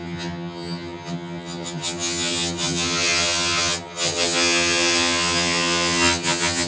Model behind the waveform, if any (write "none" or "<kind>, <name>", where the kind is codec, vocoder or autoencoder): vocoder, HiFi-GAN